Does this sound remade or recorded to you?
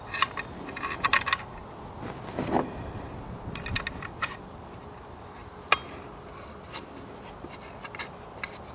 recorded